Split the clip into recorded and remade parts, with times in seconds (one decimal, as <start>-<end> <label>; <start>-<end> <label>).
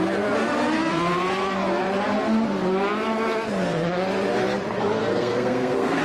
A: 0.0-5.1 recorded; 5.1-6.0 remade